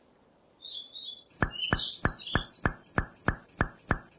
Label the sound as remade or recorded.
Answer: remade